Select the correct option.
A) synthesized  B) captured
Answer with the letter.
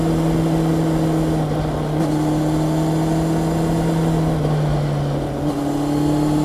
B